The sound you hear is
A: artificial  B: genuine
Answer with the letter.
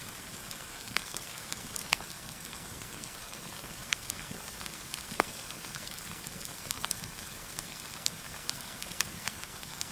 A